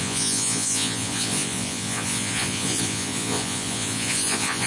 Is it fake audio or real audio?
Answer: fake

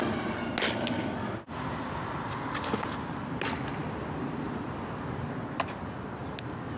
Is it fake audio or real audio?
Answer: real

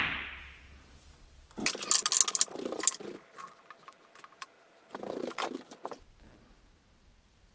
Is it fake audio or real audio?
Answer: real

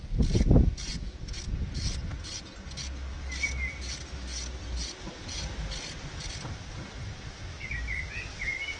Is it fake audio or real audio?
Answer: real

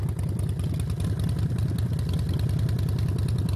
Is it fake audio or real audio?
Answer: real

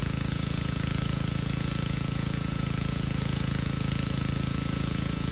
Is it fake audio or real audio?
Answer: fake